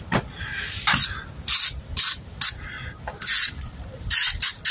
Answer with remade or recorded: recorded